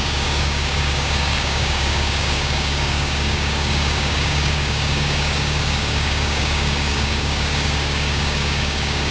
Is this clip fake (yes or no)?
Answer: yes